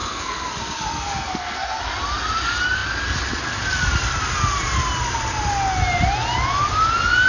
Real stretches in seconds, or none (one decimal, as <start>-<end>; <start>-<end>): 1.8-7.3